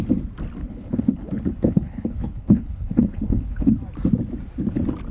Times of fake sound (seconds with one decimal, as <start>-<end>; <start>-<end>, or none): 0.6-3.7